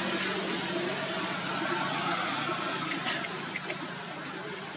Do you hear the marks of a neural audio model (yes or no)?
no